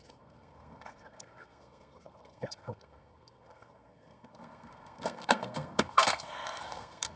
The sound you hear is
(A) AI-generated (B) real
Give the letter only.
A